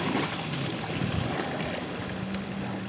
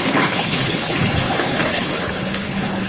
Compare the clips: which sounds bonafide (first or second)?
first